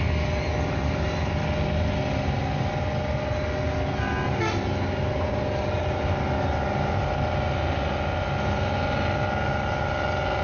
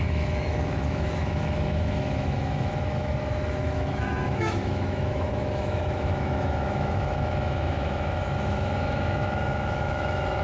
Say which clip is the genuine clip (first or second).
first